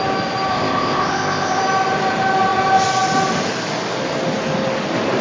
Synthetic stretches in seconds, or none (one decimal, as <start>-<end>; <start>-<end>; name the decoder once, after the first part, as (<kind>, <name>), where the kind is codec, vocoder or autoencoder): 0.5-1.6 (codec, ZipCodec)